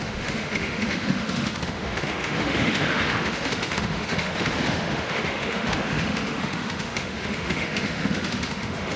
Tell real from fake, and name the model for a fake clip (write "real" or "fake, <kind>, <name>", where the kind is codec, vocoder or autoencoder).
fake, autoencoder, DAC-VAE